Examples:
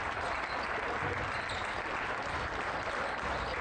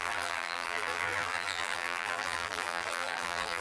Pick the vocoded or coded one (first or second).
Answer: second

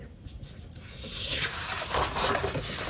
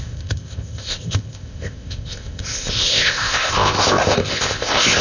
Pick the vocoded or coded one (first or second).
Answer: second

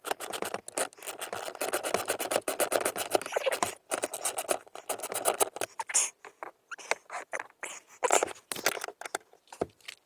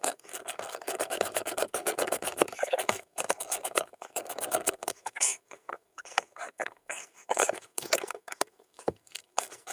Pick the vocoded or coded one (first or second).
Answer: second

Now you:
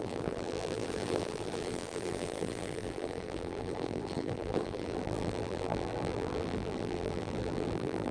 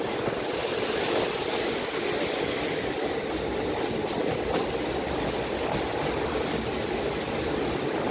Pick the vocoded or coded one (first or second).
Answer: first